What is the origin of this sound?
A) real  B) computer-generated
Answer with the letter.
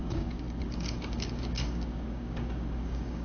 B